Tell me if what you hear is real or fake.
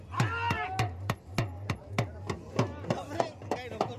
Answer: real